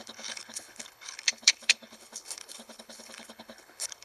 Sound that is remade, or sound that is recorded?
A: remade